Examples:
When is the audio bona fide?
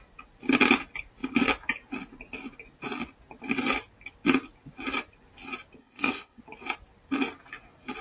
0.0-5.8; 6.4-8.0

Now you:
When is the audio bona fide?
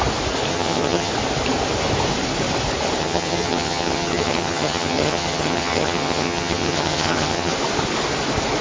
0.0-0.5; 1.1-3.0; 7.5-8.6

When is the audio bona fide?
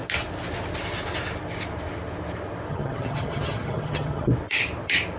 0.0-2.7; 4.3-5.2